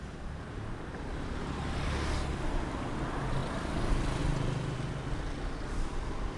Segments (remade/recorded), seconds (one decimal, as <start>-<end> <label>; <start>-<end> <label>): 0.0-3.4 remade; 3.4-4.2 recorded; 4.2-6.4 remade